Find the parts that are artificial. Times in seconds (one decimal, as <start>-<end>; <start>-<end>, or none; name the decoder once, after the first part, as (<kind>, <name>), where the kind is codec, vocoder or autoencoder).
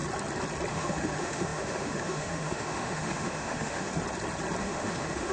0.7-3.9 (autoencoder, DAC-VAE); 4.6-5.3